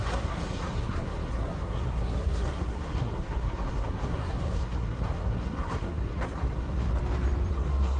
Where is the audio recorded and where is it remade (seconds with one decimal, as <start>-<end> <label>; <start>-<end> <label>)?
0.0-6.9 remade; 6.9-7.5 recorded; 7.5-8.0 remade